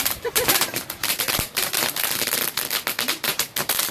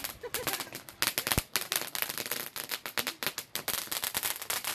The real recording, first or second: second